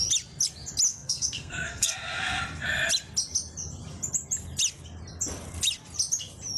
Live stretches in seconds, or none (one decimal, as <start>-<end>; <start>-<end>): 0.0-0.9; 2.4-6.6